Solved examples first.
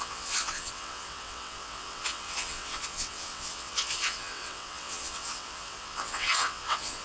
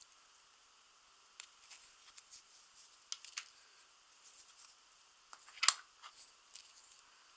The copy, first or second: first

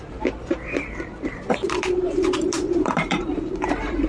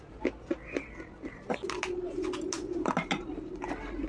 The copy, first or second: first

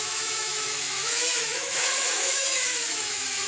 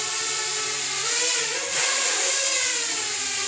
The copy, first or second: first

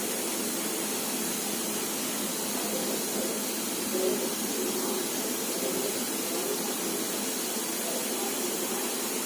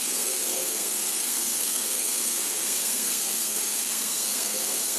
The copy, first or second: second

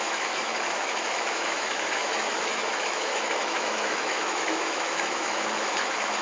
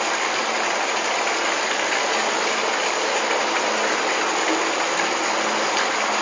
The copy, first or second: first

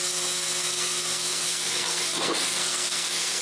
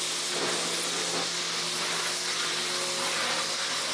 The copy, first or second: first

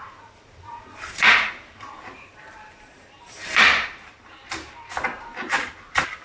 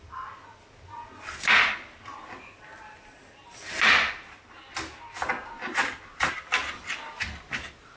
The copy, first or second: first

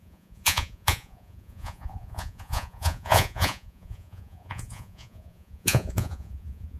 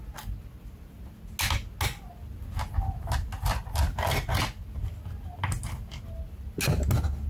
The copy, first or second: first